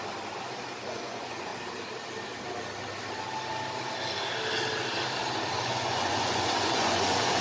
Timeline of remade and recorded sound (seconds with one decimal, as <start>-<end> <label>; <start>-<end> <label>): 0.0-0.9 recorded; 0.9-1.5 remade; 1.5-5.5 recorded; 5.5-7.4 remade